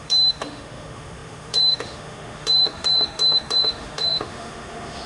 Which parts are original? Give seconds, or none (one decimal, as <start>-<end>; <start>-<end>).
none